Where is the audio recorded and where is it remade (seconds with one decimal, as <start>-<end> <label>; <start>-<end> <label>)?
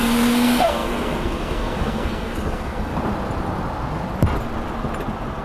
0.0-2.9 remade; 2.9-5.4 recorded